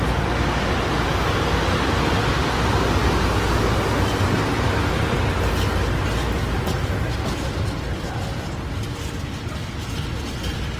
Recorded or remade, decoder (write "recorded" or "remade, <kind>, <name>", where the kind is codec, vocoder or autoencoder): recorded